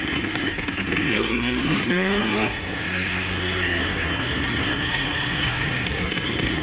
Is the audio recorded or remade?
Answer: remade